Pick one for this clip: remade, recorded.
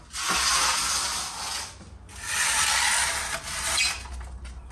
recorded